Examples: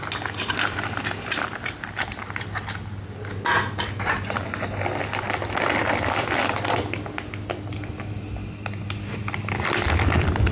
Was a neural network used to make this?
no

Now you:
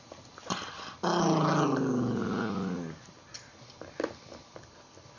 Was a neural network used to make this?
no